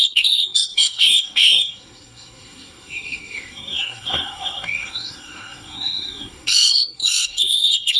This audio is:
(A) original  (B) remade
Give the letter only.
B